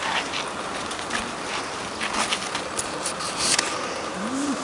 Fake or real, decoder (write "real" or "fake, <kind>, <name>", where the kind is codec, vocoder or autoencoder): real